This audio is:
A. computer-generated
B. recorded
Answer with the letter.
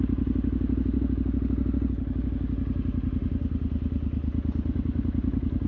B